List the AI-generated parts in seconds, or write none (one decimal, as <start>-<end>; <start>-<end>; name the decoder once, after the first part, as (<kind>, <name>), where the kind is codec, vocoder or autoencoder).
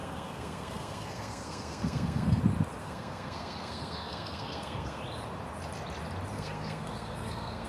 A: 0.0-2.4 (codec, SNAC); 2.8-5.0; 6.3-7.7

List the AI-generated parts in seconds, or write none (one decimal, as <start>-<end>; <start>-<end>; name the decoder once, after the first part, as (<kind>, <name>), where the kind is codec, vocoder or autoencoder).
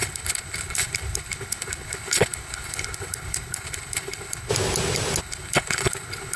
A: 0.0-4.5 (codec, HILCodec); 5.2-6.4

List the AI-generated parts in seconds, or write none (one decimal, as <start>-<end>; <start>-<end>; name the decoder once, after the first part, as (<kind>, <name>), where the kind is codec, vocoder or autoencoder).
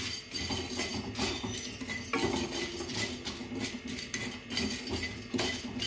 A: none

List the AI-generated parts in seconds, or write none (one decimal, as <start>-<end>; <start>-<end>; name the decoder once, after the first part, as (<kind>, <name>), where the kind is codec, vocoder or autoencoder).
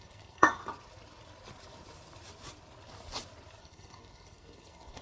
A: 0.0-0.6 (codec, SNAC); 3.6-5.0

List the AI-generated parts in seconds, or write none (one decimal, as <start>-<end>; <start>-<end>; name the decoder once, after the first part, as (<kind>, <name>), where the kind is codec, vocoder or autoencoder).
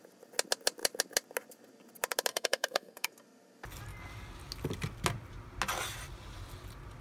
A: 2.3-3.1 (codec, SNAC)